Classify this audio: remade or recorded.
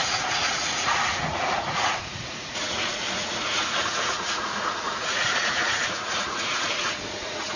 remade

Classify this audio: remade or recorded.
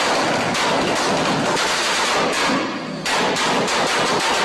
recorded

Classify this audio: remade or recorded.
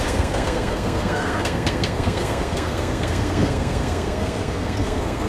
remade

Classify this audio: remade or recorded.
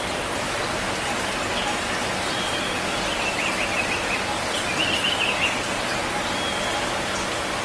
recorded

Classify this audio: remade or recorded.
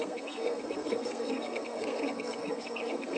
remade